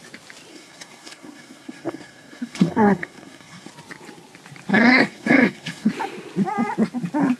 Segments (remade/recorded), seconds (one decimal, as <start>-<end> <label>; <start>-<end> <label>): 0.0-0.5 recorded; 0.5-3.7 remade; 3.7-4.7 recorded; 4.7-5.9 remade; 5.9-7.4 recorded